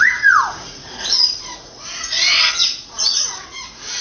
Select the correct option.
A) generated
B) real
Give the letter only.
A